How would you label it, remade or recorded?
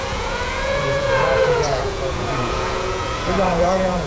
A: remade